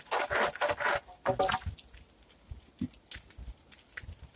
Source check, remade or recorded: recorded